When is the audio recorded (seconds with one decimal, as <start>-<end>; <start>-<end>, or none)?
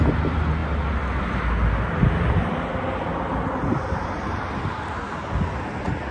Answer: 0.0-6.1